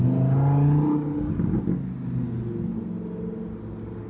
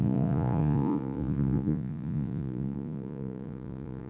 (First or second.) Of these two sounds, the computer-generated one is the second